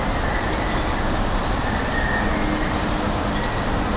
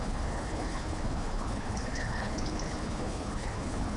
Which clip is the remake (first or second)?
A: second